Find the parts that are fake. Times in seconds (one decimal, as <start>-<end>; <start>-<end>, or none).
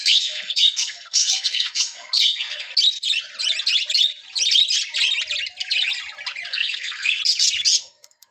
0.0-2.7; 6.5-7.2; 7.8-8.3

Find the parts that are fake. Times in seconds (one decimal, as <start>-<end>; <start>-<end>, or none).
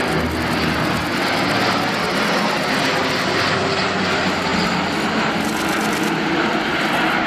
none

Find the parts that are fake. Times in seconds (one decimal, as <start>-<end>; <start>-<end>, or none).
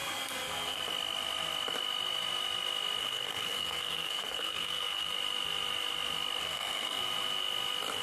0.0-0.8; 3.0-5.1; 6.4-7.0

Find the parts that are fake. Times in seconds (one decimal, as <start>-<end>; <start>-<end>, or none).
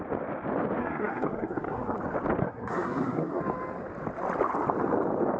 0.8-2.0; 2.4-3.4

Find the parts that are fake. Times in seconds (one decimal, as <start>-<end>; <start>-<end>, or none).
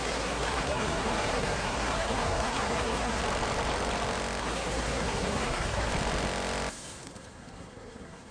0.0-3.2; 4.4-5.9; 6.7-8.3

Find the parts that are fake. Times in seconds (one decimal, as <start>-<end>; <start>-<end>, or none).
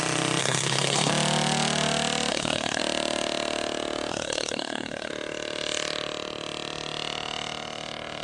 0.4-1.1; 2.3-2.8; 4.1-5.1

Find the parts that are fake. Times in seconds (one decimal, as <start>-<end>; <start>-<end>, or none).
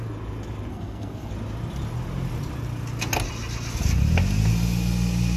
0.7-1.3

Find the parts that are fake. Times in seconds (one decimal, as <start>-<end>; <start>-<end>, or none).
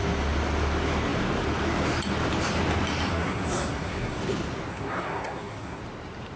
3.1-4.2; 4.7-5.8